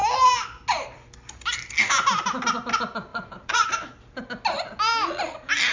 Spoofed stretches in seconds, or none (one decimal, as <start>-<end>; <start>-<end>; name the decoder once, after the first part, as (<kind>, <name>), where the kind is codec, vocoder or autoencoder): 3.1-3.7 (vocoder, Vocos)

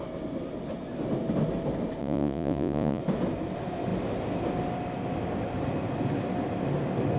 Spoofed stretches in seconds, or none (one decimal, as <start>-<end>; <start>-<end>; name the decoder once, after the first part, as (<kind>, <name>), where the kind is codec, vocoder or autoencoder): 2.0-3.0 (vocoder, Vocos)

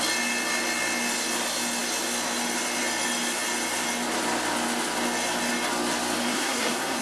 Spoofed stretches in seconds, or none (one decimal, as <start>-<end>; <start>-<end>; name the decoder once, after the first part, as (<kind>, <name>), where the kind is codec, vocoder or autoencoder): 6.3-7.0 (codec, SNAC)

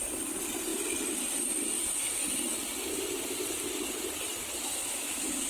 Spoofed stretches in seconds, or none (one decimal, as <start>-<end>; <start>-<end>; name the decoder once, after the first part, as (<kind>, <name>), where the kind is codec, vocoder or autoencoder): 4.7-5.5 (autoencoder, DAC-VAE)

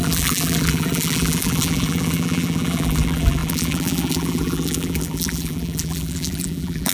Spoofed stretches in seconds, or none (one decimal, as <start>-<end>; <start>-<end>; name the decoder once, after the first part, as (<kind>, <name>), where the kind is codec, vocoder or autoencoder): 0.0-6.9 (vocoder, BigVGAN v2)

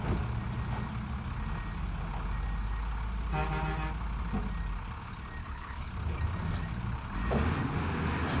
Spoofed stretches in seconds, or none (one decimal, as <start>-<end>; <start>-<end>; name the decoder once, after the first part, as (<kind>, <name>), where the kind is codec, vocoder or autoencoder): 5.4-5.9 (codec, HILCodec)

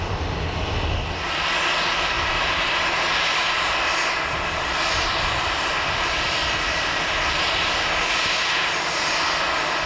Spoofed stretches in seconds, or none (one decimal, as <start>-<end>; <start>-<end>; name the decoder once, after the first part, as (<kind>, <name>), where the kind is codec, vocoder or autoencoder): 0.0-3.4 (vocoder, BigVGAN v2); 4.0-9.9